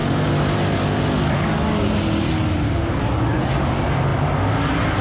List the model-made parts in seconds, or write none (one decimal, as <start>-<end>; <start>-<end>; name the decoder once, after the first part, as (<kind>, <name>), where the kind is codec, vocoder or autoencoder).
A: none